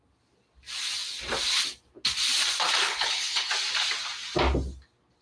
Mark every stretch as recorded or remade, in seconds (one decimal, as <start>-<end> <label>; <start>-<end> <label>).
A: 0.0-2.8 recorded; 2.8-3.5 remade; 3.5-5.2 recorded

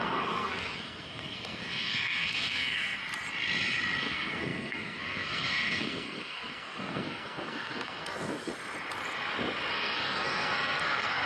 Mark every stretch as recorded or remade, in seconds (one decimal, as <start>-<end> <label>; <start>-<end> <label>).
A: 0.0-3.0 remade; 3.0-4.0 recorded; 4.0-8.5 remade; 8.5-9.7 recorded; 9.7-11.3 remade

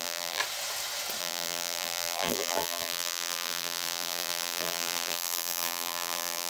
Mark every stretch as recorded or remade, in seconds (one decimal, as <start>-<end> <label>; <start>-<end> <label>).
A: 0.0-0.4 remade; 0.4-1.2 recorded; 1.2-6.5 remade

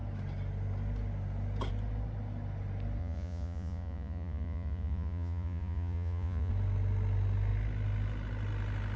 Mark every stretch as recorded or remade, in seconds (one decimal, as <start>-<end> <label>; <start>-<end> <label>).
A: 0.0-3.0 recorded; 3.0-6.5 remade; 6.5-9.0 recorded